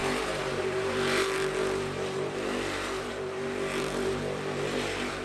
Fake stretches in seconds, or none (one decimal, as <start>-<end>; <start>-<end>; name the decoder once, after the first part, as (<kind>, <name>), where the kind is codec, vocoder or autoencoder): 0.0-5.2 (vocoder, BigVGAN v2)